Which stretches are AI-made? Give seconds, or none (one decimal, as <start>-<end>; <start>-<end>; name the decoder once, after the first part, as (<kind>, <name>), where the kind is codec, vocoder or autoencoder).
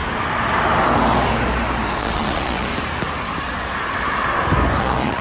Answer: 2.0-2.7 (vocoder, Vocos); 4.8-5.2